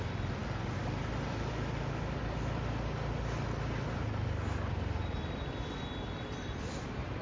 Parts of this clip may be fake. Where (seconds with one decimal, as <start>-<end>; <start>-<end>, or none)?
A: none

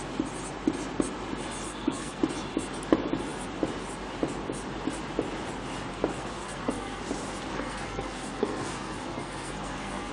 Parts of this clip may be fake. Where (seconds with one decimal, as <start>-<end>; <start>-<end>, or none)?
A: 1.7-2.2; 5.9-7.0; 7.5-10.1

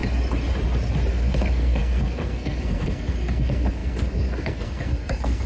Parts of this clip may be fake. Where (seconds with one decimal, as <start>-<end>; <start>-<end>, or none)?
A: 1.1-5.5

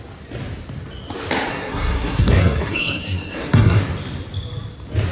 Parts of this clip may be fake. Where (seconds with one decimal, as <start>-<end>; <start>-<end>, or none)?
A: 1.5-3.8

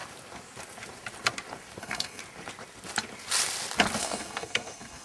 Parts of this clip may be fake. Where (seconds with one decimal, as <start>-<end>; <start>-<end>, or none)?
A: 1.8-2.2; 4.0-5.0

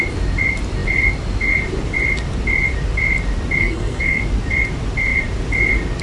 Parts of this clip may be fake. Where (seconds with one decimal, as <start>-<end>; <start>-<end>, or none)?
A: 3.6-4.2

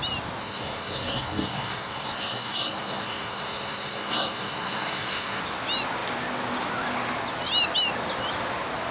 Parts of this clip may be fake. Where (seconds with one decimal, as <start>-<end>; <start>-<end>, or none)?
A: 0.4-5.4

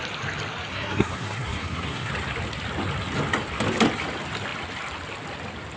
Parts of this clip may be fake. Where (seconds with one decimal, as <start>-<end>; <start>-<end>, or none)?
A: 0.7-2.1